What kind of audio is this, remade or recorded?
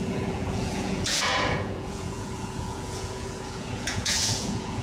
remade